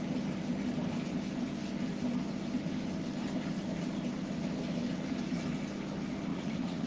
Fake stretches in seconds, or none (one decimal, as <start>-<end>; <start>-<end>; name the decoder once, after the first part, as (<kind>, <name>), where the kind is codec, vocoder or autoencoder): 6.3-6.9 (vocoder, Vocos)